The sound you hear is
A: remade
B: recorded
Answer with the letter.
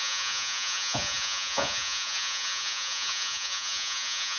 A